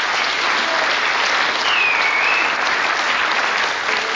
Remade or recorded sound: recorded